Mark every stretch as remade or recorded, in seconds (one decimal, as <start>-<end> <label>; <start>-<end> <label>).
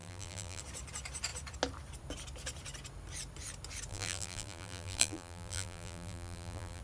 0.0-0.6 remade; 0.6-3.9 recorded; 3.9-6.8 remade